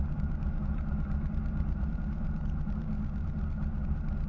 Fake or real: fake